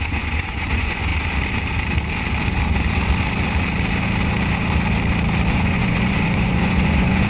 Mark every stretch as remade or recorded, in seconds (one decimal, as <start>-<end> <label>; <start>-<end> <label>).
0.0-1.1 remade; 1.1-5.5 recorded; 5.5-7.3 remade